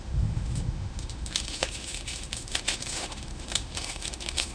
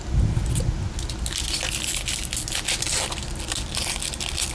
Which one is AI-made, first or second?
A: first